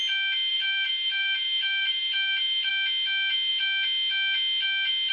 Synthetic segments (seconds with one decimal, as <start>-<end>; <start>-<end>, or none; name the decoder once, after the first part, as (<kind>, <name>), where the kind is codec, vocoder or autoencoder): 0.5-2.7 (vocoder, BigVGAN v2)